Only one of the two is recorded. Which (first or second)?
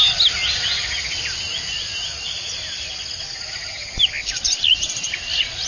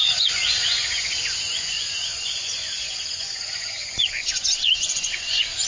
first